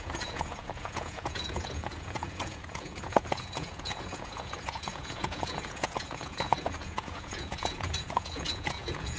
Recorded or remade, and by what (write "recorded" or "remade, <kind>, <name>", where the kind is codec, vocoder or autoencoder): remade, vocoder, Vocos